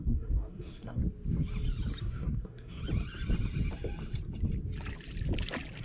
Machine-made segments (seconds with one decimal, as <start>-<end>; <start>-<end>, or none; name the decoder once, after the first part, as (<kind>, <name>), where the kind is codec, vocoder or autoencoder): 0.0-1.0 (codec, SNAC); 2.0-2.8

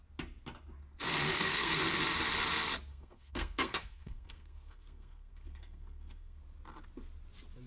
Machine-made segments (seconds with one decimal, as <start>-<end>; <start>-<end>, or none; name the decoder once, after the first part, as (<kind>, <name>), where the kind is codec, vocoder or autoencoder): 1.3-1.8 (codec, SNAC); 2.9-6.4

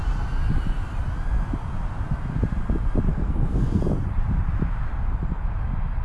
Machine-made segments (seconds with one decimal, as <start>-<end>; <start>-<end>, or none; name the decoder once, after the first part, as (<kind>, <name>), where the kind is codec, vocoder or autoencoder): 3.1-3.8 (codec, SNAC)

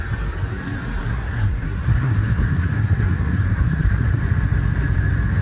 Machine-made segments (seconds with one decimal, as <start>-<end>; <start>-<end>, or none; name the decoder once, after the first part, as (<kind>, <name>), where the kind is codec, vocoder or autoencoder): 1.0-4.2 (codec, SNAC)